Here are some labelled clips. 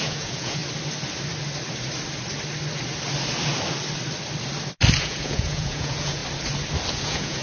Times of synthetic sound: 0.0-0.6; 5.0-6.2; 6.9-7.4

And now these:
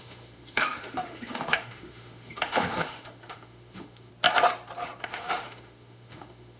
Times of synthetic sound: 0.0-4.1; 5.0-6.6